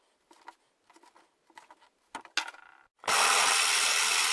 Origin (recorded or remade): recorded